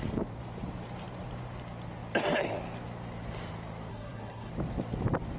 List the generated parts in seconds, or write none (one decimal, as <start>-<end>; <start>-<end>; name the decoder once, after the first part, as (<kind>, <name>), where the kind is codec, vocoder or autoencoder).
3.9-4.5 (codec, SNAC)